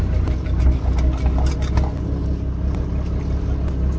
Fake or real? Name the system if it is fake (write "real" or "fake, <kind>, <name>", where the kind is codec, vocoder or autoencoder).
real